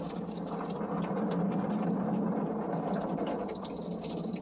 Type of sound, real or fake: real